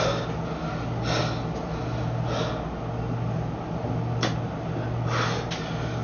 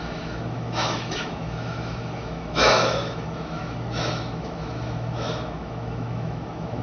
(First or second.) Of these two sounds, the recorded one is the first